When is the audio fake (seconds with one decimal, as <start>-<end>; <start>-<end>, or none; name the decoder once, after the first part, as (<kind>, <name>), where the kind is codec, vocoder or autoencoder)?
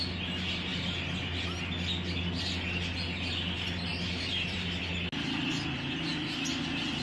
3.9-4.8 (vocoder, BigVGAN v2)